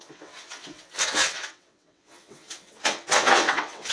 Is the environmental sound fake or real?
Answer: fake